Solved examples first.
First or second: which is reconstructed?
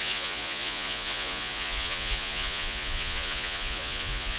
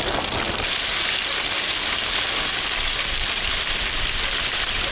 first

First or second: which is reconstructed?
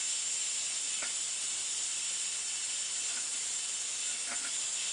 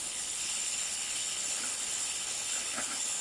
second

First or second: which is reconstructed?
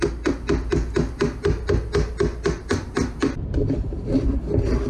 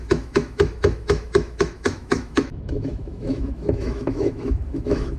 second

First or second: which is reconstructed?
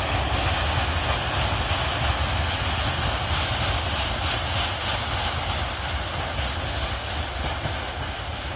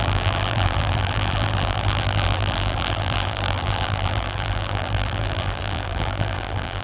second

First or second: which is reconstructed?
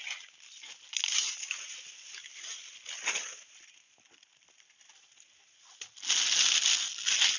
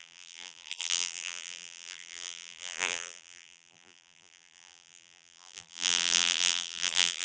second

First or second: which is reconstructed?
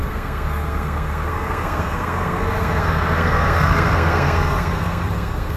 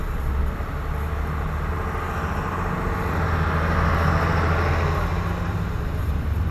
first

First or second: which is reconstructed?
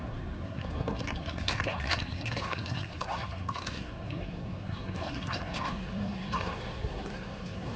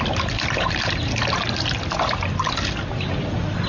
first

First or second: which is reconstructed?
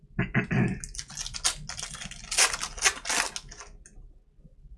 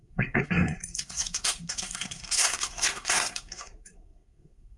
second